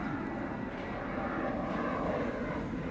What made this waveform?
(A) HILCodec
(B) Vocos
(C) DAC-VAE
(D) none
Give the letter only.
D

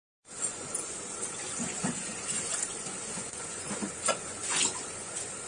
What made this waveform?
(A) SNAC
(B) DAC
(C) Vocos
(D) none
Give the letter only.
C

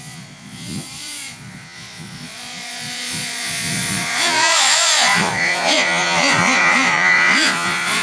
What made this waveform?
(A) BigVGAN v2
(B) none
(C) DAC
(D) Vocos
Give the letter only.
D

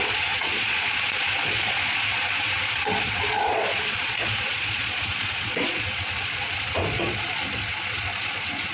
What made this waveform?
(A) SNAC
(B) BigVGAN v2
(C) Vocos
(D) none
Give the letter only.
C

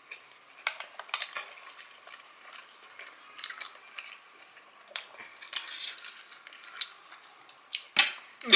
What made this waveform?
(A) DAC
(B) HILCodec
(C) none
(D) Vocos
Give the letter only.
C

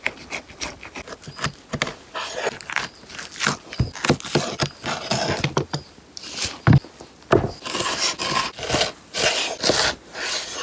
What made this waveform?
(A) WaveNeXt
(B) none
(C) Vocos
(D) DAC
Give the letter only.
B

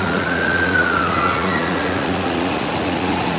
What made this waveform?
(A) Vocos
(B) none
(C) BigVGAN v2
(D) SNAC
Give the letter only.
A